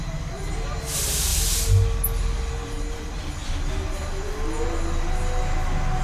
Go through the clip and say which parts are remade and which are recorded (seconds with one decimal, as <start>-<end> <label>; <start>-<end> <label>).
0.0-6.0 recorded